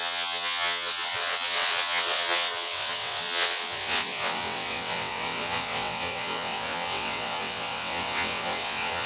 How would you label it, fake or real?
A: fake